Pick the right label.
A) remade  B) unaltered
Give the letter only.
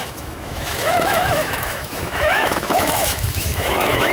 A